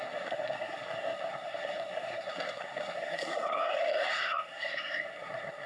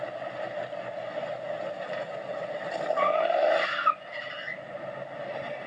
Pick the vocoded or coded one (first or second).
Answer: first